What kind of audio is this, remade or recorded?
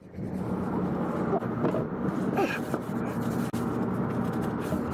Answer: recorded